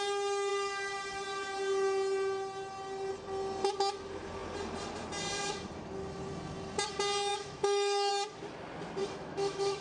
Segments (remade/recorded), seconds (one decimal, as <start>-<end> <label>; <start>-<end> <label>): 0.0-7.3 recorded; 7.3-8.1 remade; 8.1-9.0 recorded; 9.0-9.8 remade